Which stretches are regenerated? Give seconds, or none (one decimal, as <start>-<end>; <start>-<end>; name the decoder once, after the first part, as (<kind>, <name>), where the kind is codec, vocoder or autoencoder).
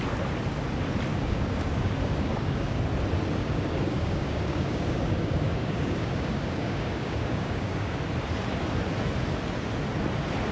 1.1-2.8 (codec, DAC); 3.4-8.0